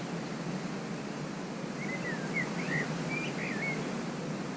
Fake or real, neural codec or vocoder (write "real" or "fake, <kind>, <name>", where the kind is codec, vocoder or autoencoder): real